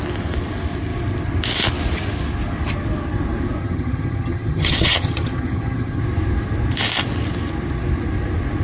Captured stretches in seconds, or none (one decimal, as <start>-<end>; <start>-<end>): 0.0-3.6; 6.0-8.6